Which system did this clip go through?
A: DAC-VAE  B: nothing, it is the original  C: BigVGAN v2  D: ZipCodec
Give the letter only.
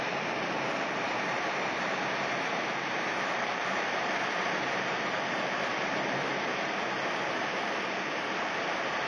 C